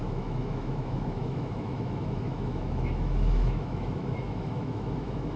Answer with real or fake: fake